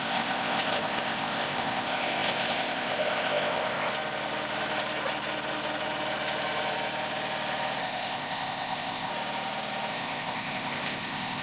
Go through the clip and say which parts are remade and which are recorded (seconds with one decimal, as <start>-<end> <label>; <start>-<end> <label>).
0.0-3.9 remade; 3.9-7.8 recorded; 7.8-9.1 remade; 9.1-9.9 recorded; 9.9-11.4 remade

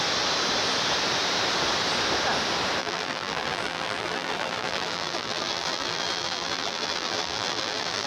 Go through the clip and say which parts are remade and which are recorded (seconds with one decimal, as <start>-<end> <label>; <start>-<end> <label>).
0.0-2.8 recorded; 2.8-8.1 remade

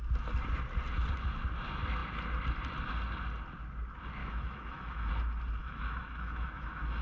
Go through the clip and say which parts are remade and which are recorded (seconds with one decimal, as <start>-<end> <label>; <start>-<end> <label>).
0.0-4.2 recorded; 4.2-5.1 remade; 5.1-5.6 recorded; 5.6-7.0 remade